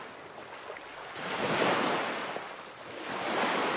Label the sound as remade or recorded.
recorded